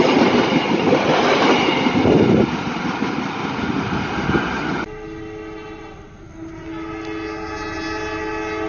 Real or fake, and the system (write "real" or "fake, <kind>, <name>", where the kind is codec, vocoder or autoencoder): real